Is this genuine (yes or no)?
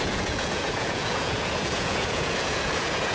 no